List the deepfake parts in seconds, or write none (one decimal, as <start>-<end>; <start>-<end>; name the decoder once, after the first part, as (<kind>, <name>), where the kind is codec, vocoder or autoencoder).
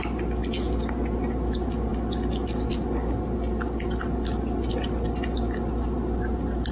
none